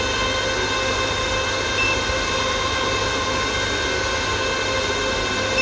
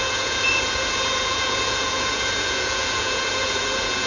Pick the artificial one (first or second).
second